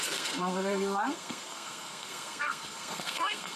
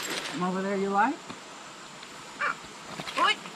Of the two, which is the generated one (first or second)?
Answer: first